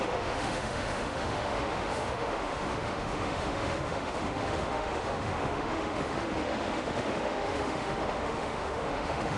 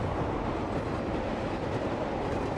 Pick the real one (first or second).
second